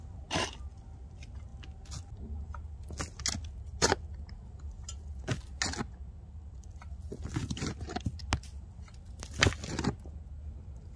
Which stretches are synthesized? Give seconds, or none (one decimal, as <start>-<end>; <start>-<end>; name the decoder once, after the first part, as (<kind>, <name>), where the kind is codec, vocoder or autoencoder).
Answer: 7.4-8.2 (vocoder, BigVGAN v2)